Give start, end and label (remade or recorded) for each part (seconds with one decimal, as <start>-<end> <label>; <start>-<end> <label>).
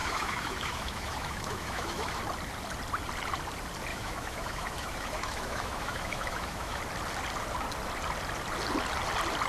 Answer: 0.0-2.2 remade; 2.2-3.9 recorded; 3.9-6.8 remade; 6.8-9.5 recorded